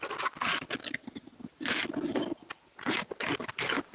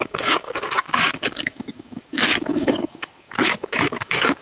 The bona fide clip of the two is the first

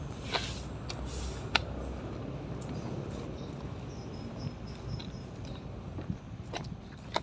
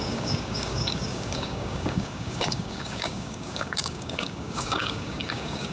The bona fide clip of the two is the first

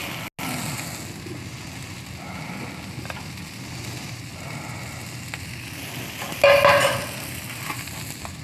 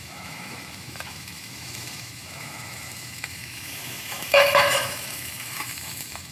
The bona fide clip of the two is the first